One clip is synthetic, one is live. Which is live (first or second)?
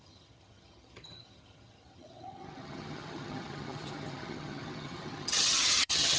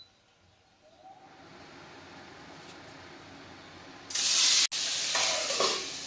second